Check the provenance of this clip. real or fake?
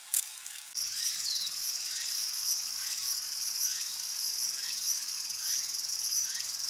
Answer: fake